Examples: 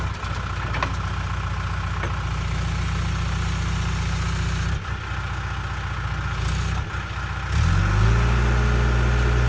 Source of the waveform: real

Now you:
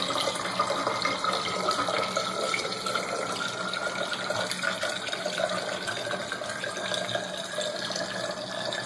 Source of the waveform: real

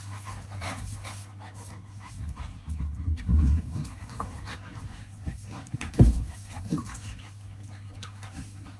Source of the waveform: fake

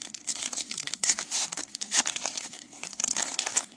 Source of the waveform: fake